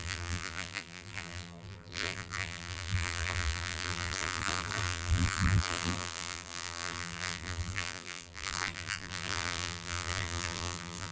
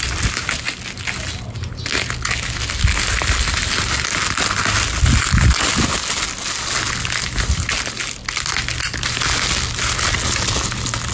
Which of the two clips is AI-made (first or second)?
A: first